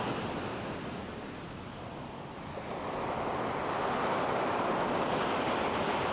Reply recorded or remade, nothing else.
recorded